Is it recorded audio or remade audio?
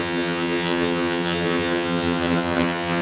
remade